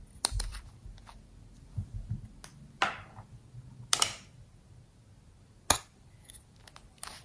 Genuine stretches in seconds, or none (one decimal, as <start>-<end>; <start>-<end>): 0.0-7.2